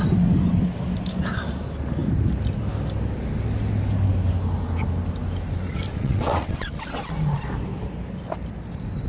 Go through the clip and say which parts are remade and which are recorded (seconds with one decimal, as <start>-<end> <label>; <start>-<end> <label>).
0.0-5.9 recorded; 5.9-7.0 remade; 7.0-9.1 recorded